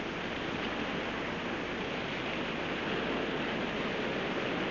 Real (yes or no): yes